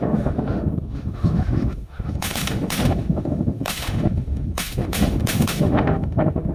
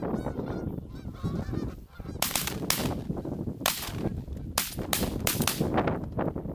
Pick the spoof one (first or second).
first